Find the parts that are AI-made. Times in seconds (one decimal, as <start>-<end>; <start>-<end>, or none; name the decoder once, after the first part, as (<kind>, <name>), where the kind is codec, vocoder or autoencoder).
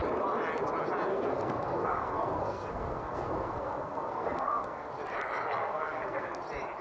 1.1-4.9 (codec, SNAC); 5.6-6.3